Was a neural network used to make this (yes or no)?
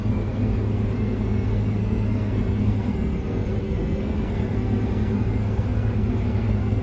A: yes